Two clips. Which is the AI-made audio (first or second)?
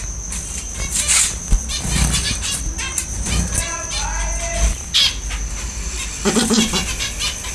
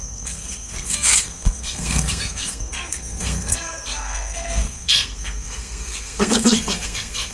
second